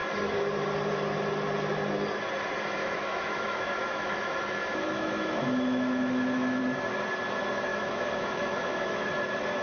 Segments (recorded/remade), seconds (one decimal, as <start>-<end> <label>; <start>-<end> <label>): 0.0-2.8 recorded; 2.8-6.6 remade; 6.6-7.7 recorded; 7.7-9.1 remade; 9.1-9.6 recorded